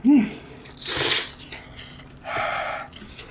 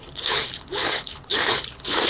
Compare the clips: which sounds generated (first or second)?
second